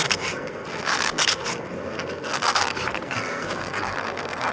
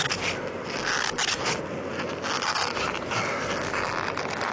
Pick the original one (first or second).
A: second